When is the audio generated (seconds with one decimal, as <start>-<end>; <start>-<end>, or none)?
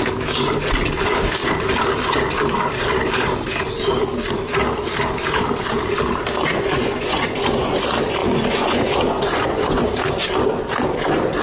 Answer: 6.5-7.7; 8.2-9.8